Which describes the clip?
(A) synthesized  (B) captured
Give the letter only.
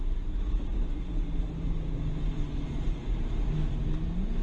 B